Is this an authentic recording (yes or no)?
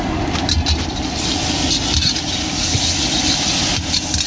yes